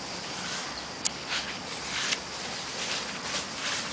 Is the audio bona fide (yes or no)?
yes